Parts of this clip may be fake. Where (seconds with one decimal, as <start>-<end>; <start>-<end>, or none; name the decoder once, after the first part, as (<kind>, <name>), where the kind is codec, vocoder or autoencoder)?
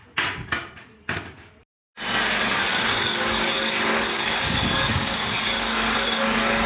2.7-6.7 (codec, DAC)